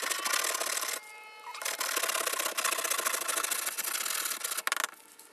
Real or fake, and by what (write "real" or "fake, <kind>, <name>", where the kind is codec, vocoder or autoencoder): real